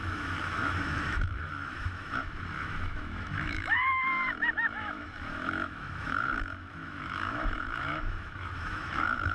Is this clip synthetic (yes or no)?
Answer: yes